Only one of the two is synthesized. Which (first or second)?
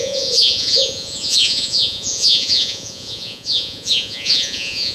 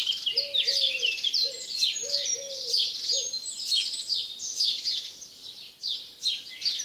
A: first